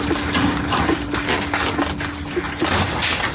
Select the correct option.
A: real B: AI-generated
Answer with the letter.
A